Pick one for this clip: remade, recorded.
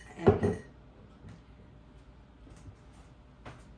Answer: recorded